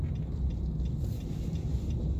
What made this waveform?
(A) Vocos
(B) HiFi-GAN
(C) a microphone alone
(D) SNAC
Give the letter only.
C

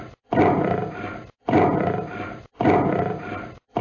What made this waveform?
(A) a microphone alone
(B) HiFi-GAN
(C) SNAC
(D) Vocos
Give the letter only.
A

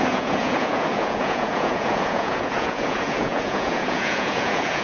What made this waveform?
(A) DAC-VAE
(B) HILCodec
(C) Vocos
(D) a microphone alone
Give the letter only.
C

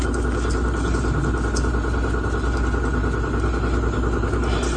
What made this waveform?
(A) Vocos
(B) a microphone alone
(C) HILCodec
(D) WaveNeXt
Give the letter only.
B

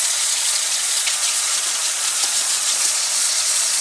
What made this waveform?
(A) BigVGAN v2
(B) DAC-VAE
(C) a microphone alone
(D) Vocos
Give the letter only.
D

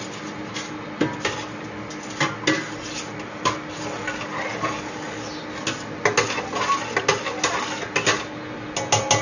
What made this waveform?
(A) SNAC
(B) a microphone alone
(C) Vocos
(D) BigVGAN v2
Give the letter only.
B